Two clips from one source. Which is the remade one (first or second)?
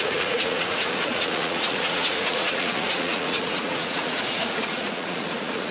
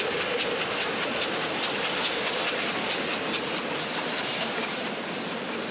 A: first